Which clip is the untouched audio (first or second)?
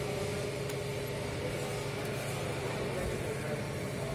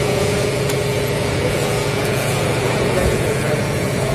first